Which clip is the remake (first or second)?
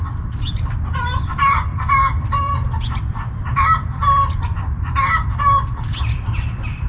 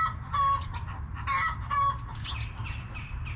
first